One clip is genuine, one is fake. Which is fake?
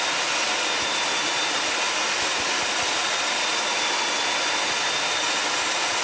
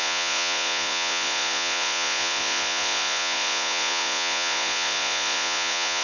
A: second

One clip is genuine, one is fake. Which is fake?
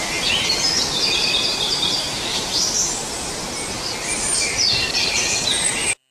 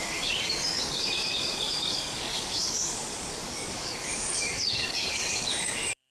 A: second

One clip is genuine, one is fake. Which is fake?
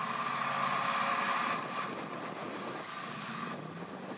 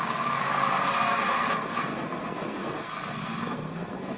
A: second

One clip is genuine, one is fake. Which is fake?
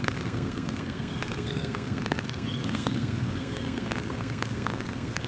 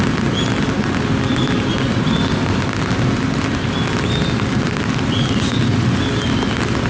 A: first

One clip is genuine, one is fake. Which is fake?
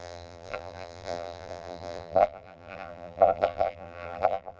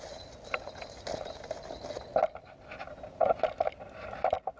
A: first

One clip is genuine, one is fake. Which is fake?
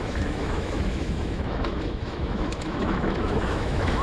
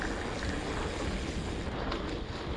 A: first